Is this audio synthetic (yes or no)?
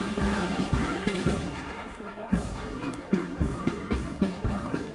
yes